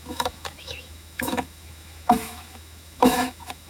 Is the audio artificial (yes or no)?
yes